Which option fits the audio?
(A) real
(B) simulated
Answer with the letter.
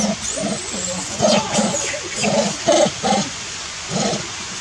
B